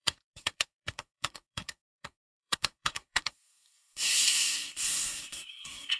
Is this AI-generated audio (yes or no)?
yes